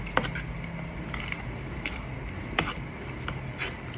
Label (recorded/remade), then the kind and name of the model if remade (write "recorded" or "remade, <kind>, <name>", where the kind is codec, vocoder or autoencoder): recorded